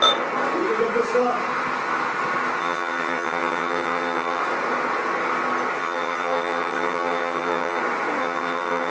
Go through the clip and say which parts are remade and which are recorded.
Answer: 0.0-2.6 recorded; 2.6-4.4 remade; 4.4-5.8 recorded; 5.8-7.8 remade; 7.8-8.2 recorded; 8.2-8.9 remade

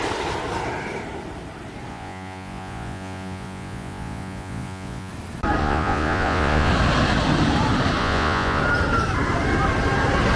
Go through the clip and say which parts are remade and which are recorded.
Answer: 0.0-1.9 recorded; 1.9-5.1 remade; 5.1-5.6 recorded; 5.6-6.7 remade; 6.7-8.0 recorded; 8.0-8.6 remade; 8.6-10.4 recorded

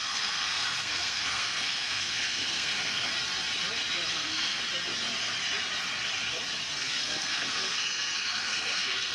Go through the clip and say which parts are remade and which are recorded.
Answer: 0.0-3.1 remade; 3.1-4.1 recorded; 4.1-4.6 remade; 4.6-6.8 recorded; 6.8-9.1 remade

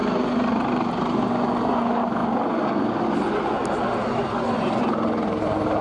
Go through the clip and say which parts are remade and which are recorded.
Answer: 0.0-0.9 remade; 0.9-5.8 recorded

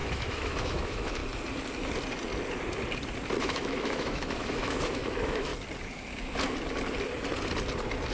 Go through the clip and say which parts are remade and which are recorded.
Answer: 0.0-1.2 remade; 1.2-3.4 recorded; 3.4-5.5 remade; 5.5-8.1 recorded